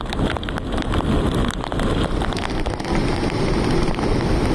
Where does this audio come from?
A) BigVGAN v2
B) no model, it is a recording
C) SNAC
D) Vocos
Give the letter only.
B